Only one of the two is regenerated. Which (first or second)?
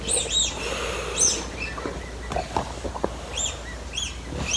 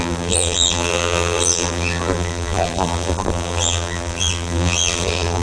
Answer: second